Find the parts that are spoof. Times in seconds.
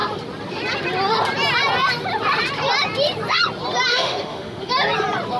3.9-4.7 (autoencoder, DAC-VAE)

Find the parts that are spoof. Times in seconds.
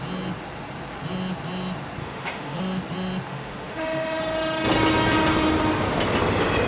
2.0-2.6 (autoencoder, DAC-VAE); 3.3-4.2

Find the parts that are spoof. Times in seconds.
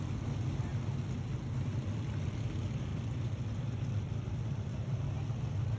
0.0-0.7 (vocoder, BigVGAN v2); 1.3-2.9; 3.9-5.8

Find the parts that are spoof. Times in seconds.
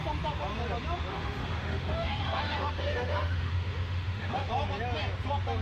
1.1-4.5 (autoencoder, DAC-VAE)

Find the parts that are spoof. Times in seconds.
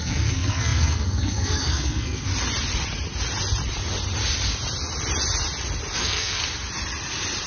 0.0-2.3 (codec, SNAC); 6.0-6.4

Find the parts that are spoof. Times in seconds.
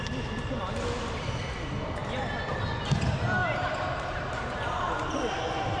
3.4-4.8 (vocoder, BigVGAN v2)